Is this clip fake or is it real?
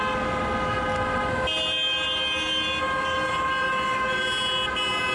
real